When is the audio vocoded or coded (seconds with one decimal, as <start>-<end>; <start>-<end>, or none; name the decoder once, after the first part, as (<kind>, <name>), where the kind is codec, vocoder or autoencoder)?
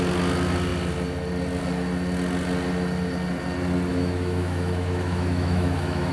3.9-6.1 (autoencoder, DAC-VAE)